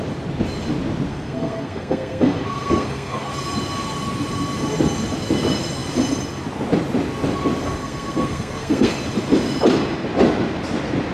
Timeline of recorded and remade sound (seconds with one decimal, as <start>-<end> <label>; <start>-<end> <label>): 0.0-1.1 recorded; 1.1-3.3 remade; 3.3-7.8 recorded; 7.8-9.0 remade; 9.0-11.1 recorded